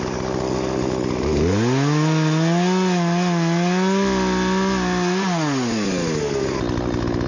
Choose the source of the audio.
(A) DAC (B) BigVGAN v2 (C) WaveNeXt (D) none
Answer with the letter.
D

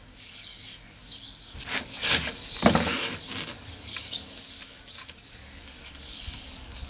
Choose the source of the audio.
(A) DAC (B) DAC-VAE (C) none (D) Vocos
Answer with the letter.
A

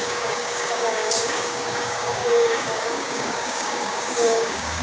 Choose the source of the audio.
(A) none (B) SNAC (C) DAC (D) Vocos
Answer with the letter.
C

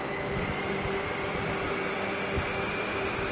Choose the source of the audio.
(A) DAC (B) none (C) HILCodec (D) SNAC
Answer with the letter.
B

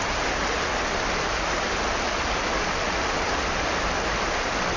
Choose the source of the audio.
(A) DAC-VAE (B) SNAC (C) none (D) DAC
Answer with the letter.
C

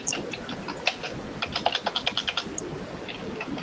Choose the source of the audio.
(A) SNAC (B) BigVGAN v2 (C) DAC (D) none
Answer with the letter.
D